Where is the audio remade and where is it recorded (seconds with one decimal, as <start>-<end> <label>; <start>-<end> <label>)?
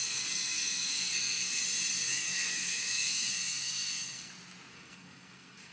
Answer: 0.0-1.6 remade; 1.6-2.1 recorded; 2.1-4.3 remade; 4.3-4.7 recorded; 4.7-5.7 remade